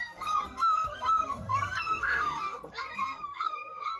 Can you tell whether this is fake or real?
fake